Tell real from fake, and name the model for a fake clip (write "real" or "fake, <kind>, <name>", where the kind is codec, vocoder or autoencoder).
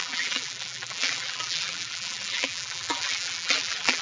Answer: fake, vocoder, BigVGAN v2